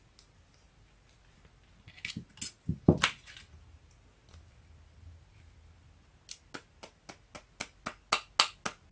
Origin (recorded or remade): recorded